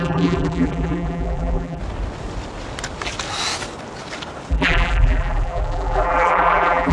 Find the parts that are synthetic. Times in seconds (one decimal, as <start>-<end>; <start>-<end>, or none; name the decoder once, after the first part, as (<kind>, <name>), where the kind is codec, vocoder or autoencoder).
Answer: 0.0-1.8 (vocoder, BigVGAN v2); 4.5-6.9